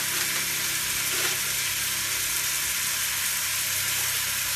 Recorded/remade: recorded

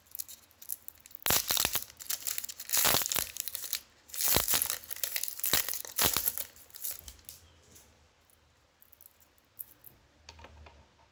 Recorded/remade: recorded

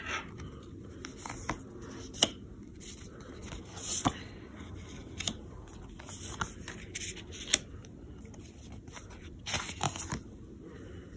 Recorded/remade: recorded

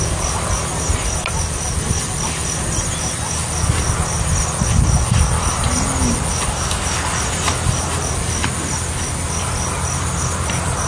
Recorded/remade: recorded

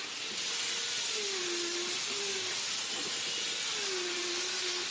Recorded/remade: recorded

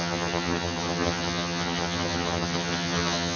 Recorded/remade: remade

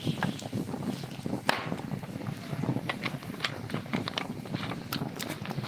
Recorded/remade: recorded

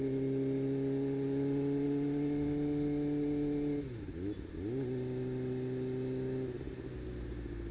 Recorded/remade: recorded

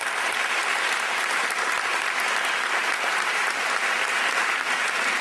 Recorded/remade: recorded